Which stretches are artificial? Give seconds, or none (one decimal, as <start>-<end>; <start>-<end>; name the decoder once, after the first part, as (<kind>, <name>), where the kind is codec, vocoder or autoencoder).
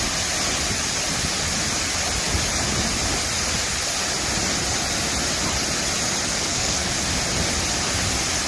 6.3-6.9 (codec, SNAC)